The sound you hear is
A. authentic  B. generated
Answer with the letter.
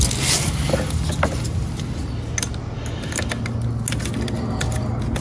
A